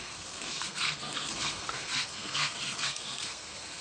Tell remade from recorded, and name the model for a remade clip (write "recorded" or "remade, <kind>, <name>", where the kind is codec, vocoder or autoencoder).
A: remade, codec, SNAC